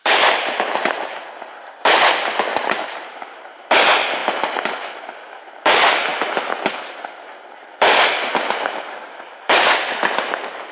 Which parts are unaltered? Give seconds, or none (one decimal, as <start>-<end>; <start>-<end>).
0.0-2.5; 3.4-10.7